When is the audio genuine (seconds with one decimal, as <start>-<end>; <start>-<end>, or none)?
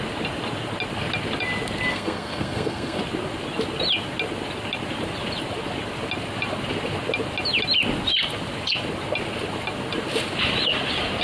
0.0-1.9; 3.0-11.2